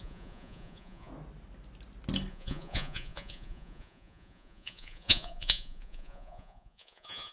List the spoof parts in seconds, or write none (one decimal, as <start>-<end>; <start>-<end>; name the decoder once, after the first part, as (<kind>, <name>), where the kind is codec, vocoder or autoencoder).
0.0-1.1 (vocoder, Vocos); 2.3-7.3